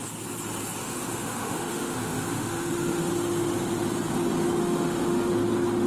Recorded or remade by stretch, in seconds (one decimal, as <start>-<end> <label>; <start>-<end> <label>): 0.0-0.8 recorded; 0.8-3.1 remade; 3.1-4.6 recorded; 4.6-5.3 remade; 5.3-5.9 recorded